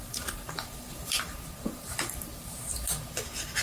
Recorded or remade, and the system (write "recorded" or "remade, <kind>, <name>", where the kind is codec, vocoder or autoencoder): remade, vocoder, BigVGAN v2